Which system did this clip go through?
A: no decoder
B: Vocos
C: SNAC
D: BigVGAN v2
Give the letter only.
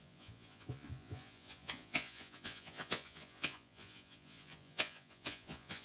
B